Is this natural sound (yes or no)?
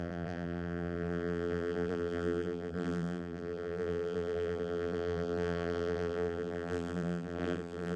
no